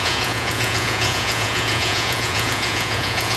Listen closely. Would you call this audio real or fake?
fake